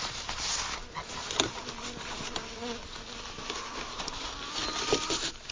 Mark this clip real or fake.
real